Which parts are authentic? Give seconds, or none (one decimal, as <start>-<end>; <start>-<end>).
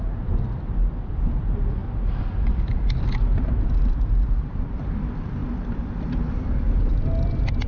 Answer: 0.0-7.7